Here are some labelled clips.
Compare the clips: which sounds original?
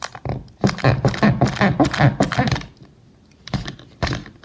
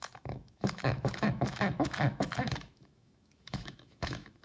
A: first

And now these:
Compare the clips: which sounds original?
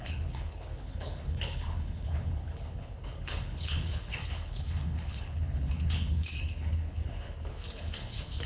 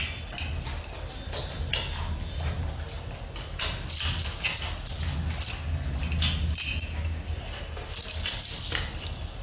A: second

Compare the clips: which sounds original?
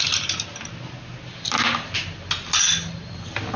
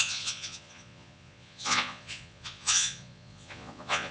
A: first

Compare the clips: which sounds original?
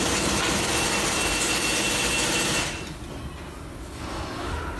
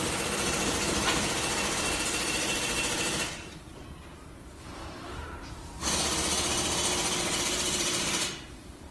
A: first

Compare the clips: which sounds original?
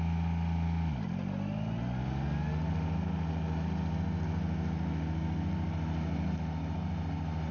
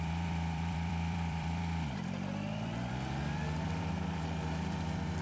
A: first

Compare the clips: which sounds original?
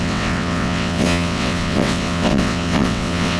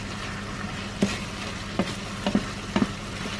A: second